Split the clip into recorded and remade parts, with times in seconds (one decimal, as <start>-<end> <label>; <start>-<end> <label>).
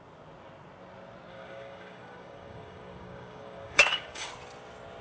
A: 0.0-1.3 recorded; 1.3-4.3 remade; 4.3-5.0 recorded